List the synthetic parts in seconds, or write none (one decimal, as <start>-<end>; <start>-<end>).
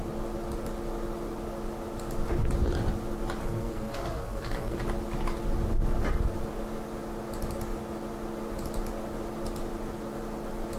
3.4-4.8